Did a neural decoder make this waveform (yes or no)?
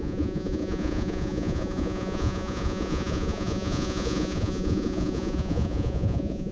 yes